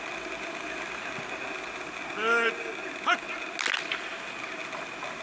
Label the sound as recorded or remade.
recorded